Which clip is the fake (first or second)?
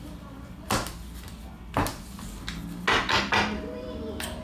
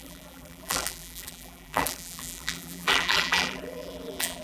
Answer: second